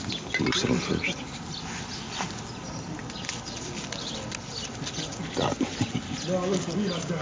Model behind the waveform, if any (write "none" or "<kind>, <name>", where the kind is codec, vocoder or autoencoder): none